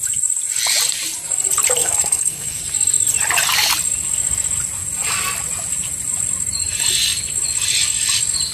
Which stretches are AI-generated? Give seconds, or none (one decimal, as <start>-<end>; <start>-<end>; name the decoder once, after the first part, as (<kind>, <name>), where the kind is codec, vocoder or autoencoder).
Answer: 1.8-2.6 (codec, SNAC)